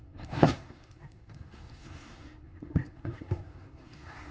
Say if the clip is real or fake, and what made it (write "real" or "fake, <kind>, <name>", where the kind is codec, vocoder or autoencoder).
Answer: fake, codec, SNAC